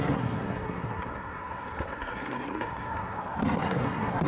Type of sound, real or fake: fake